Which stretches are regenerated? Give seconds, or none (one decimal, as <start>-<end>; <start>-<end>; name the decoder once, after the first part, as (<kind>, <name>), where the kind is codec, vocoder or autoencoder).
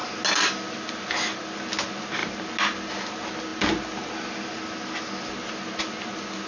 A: none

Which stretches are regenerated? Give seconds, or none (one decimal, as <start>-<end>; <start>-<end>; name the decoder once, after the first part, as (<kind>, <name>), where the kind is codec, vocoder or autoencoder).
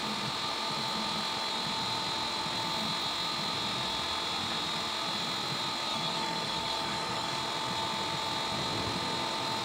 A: 5.9-7.4 (codec, DAC)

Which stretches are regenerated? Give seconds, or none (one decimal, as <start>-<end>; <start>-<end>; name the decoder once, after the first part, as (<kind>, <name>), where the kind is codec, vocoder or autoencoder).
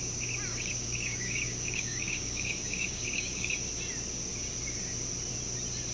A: 0.5-3.5 (codec, DAC)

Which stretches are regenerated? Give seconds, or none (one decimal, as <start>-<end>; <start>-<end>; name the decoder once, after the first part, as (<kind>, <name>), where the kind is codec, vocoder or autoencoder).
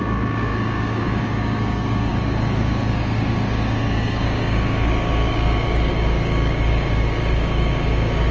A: 0.0-8.3 (codec, DAC)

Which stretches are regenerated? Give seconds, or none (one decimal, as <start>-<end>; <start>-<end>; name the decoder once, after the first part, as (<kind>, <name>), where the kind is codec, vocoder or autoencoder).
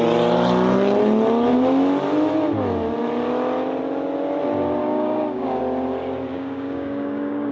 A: 4.8-5.6 (codec, DAC); 6.3-7.5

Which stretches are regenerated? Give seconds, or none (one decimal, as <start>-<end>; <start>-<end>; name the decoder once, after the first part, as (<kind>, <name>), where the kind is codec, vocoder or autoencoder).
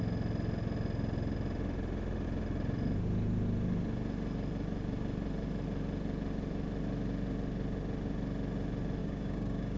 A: 9.0-9.8 (codec, DAC)